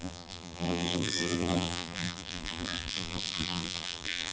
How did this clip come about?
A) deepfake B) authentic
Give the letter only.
A